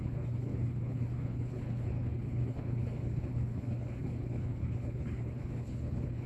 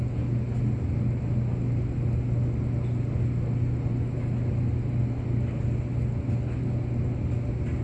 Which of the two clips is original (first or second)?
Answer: second